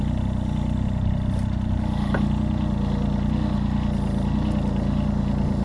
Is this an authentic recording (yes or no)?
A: yes